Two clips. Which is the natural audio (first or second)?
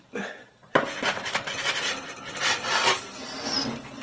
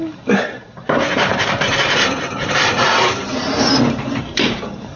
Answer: first